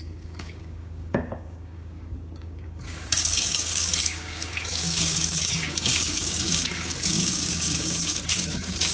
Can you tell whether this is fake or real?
fake